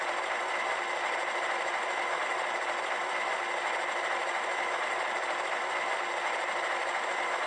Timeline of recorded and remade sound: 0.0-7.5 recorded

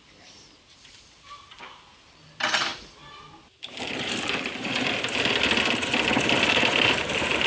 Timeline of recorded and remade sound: 0.0-4.8 remade; 4.8-6.5 recorded; 6.5-7.5 remade

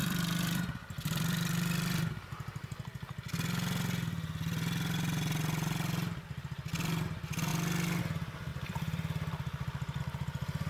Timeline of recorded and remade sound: 0.0-2.1 remade; 2.1-8.5 recorded; 8.5-10.0 remade; 10.0-10.7 recorded

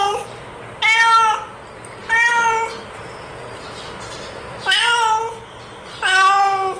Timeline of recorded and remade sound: 0.0-6.8 recorded

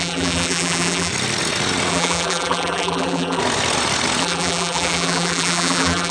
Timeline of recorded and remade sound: 0.0-1.1 remade; 1.1-1.9 recorded; 1.9-3.4 remade; 3.4-4.2 recorded; 4.2-6.1 remade

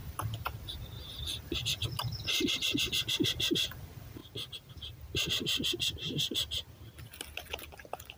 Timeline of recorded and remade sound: 0.0-0.8 remade; 0.8-8.2 recorded

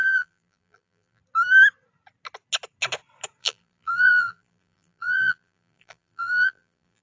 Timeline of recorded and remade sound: 0.0-1.2 remade; 1.2-3.4 recorded; 3.4-7.0 remade